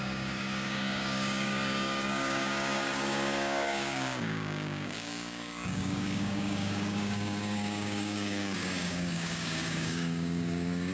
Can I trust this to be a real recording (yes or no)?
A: no